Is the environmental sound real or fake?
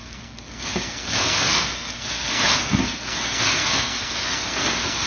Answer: fake